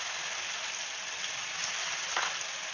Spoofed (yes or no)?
no